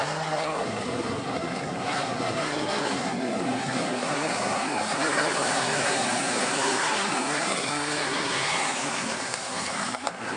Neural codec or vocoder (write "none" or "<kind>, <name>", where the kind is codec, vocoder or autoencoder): codec, SNAC